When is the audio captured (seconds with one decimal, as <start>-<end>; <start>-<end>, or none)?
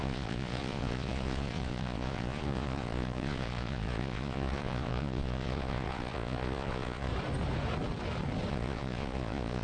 7.1-8.5